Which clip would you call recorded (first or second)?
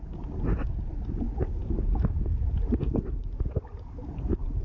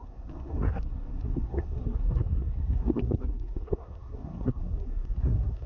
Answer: first